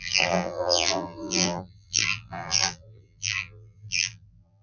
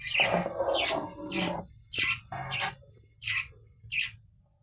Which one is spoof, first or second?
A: first